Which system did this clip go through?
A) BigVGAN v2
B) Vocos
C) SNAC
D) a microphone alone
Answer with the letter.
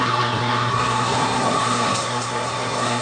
C